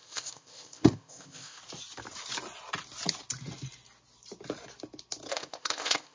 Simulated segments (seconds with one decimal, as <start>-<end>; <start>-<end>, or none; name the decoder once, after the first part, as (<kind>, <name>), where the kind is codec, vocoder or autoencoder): 0.0-1.6 (codec, ZipCodec); 5.3-6.1